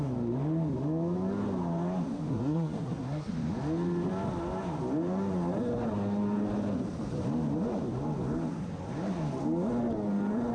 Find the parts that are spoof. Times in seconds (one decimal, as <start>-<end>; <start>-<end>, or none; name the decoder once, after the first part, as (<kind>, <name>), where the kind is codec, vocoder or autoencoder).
2.3-3.3 (codec, SNAC)